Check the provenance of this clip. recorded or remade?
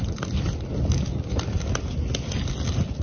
recorded